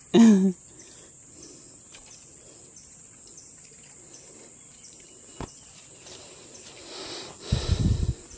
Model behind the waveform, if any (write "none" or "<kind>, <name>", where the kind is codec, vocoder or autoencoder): none